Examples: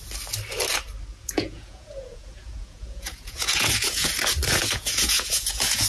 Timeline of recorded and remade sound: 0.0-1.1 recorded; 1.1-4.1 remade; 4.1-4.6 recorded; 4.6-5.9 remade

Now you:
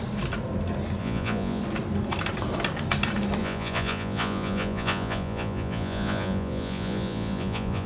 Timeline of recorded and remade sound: 0.0-1.0 recorded; 1.0-1.6 remade; 1.6-3.4 recorded; 3.4-7.9 remade

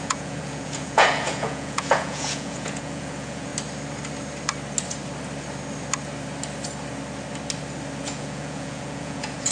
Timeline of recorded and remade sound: 0.0-3.5 remade; 3.5-8.0 recorded; 8.0-9.5 remade